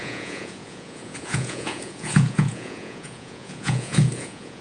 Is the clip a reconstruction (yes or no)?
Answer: yes